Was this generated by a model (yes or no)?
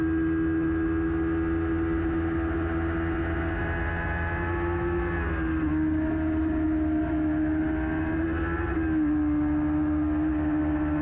no